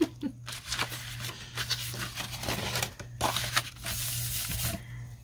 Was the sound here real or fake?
real